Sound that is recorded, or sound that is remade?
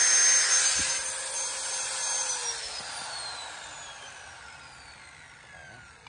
recorded